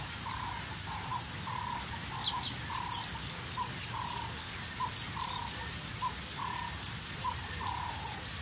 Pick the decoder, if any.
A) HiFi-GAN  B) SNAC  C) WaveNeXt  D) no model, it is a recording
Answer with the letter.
D